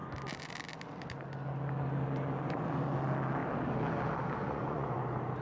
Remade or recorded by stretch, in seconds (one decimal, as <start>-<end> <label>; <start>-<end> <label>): 0.0-4.4 recorded; 4.4-5.0 remade; 5.0-5.4 recorded